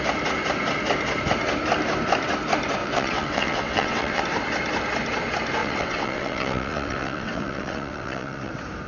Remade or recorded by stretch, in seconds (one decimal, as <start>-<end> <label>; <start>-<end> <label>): 0.0-2.8 recorded; 2.8-4.2 remade; 4.2-5.6 recorded; 5.6-8.5 remade; 8.5-8.9 recorded